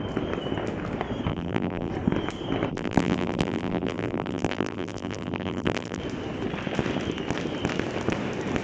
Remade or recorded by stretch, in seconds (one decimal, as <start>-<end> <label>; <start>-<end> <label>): 0.0-1.3 recorded; 1.3-1.9 remade; 1.9-2.7 recorded; 2.7-6.0 remade; 6.0-8.6 recorded